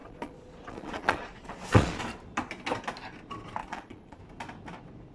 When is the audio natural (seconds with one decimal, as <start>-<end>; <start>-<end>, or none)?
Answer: 2.0-3.6; 4.2-5.1